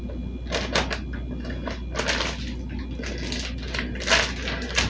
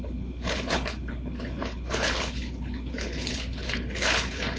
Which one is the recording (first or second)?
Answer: first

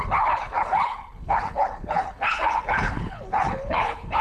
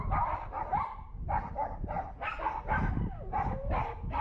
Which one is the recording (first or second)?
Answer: second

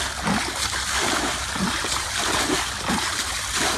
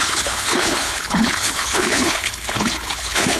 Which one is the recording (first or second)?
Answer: first